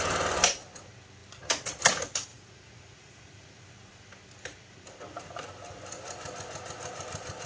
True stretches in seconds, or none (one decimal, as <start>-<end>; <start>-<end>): 0.0-2.3; 3.6-7.5